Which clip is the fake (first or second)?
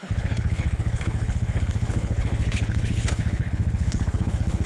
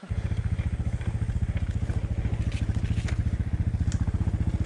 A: first